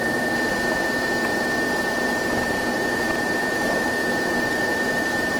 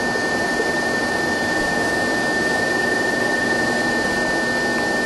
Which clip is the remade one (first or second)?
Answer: first